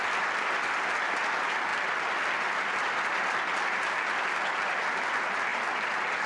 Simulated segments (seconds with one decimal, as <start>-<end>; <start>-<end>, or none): 1.7-2.2; 5.5-6.3